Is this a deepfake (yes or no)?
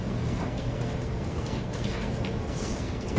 yes